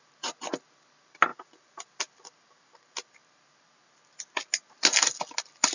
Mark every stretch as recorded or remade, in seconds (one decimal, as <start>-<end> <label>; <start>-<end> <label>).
0.0-5.7 recorded